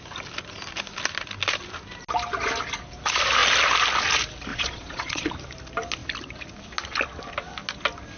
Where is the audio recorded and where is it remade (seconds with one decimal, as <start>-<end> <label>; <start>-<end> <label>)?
0.0-4.5 recorded; 4.5-5.3 remade; 5.3-8.2 recorded